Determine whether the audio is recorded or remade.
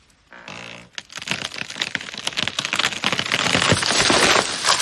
recorded